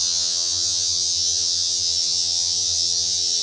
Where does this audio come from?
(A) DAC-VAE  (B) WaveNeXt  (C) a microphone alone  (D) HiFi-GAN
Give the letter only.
D